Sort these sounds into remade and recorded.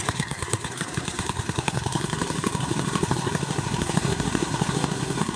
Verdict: remade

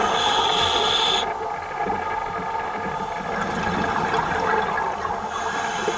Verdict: recorded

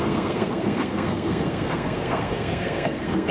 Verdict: remade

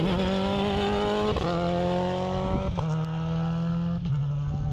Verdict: recorded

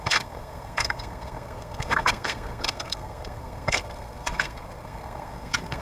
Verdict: remade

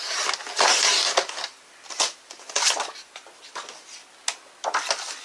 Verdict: recorded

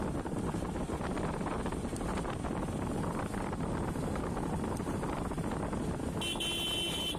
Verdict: recorded